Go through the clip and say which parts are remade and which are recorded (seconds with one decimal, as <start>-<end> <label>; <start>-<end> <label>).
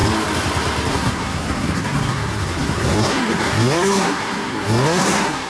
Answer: 0.0-0.9 recorded; 0.9-5.5 remade